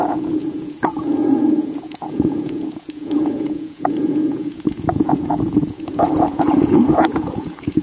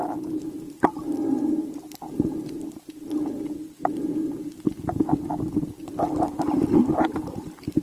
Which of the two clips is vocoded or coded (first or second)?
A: first